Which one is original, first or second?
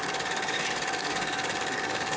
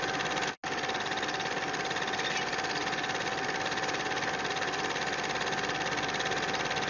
second